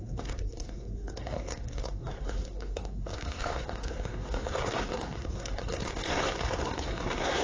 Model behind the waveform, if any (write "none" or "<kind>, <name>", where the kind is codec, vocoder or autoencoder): codec, SNAC